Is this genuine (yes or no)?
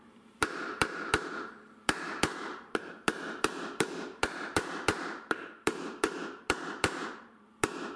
no